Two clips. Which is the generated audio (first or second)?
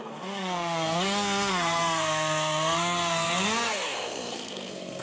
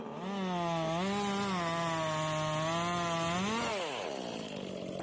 first